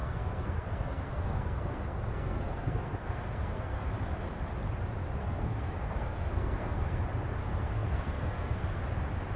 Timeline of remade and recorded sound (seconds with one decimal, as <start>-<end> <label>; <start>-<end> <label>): 0.0-3.9 remade; 3.9-5.2 recorded; 5.2-7.0 remade; 7.0-7.4 recorded; 7.4-8.8 remade; 8.8-9.4 recorded